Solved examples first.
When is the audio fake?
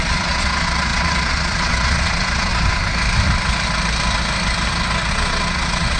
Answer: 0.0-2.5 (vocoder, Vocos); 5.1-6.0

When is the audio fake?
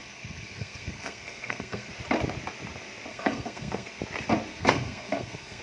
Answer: 0.0-1.9 (codec, SNAC); 3.1-4.0; 4.5-5.6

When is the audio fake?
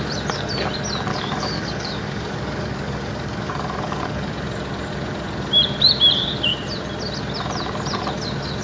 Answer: 1.1-4.3 (codec, DAC)